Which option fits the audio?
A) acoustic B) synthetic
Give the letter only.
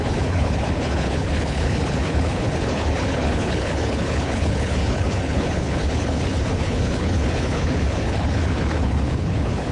B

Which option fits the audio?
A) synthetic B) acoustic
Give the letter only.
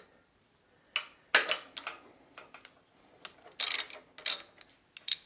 B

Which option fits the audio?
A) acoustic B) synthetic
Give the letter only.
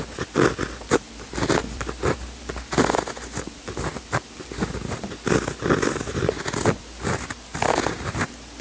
A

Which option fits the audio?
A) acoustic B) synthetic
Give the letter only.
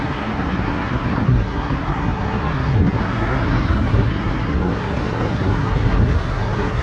B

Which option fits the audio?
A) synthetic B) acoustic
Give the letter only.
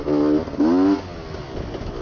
B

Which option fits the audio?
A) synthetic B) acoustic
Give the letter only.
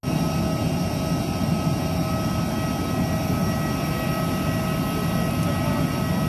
B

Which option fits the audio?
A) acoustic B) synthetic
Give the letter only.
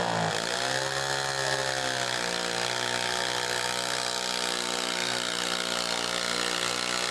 A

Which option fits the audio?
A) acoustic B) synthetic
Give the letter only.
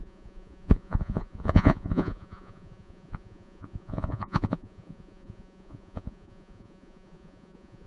B